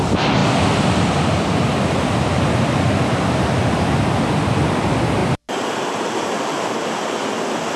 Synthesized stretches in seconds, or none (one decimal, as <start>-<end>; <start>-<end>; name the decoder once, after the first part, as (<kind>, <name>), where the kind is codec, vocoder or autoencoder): none